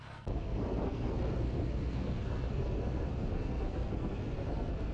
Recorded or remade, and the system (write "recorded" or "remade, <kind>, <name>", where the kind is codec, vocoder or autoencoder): remade, codec, SNAC